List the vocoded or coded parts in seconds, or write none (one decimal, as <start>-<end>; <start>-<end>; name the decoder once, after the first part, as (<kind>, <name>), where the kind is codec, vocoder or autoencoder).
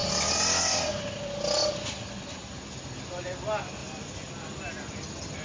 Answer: 3.8-4.3 (vocoder, BigVGAN v2)